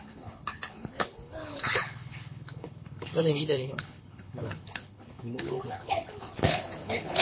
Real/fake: fake